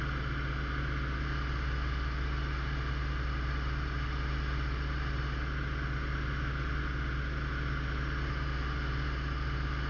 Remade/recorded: recorded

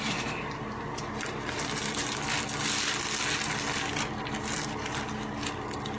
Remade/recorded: recorded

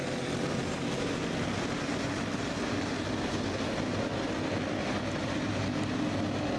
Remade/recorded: recorded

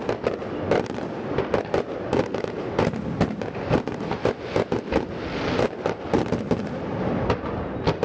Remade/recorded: recorded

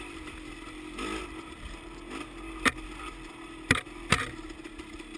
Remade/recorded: recorded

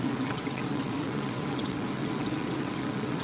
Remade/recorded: remade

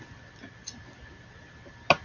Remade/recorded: recorded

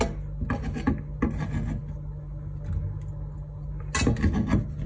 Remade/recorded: recorded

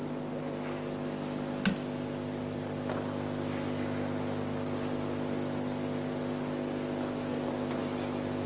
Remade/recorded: recorded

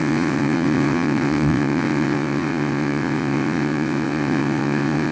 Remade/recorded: remade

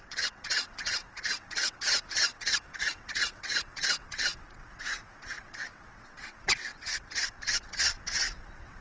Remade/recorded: remade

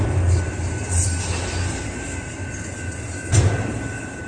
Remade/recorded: recorded